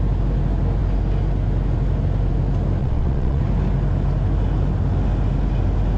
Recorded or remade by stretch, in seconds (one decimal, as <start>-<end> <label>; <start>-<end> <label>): 0.0-2.8 recorded; 2.8-3.4 remade; 3.4-6.0 recorded

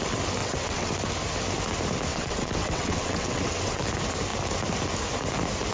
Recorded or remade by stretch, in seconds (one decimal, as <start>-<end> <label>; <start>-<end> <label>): 0.0-0.4 recorded; 0.4-0.9 remade; 0.9-2.1 recorded; 2.1-3.8 remade; 3.8-5.7 recorded

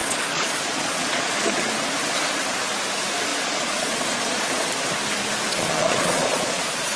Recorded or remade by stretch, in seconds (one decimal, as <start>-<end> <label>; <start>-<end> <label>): 0.0-1.7 remade; 1.7-3.3 recorded; 3.3-4.7 remade; 4.7-5.5 recorded; 5.5-7.0 remade